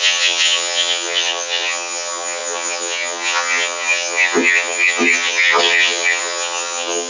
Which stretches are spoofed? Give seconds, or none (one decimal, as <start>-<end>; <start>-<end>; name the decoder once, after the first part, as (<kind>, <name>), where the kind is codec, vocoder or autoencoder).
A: 0.0-7.1 (vocoder, HiFi-GAN)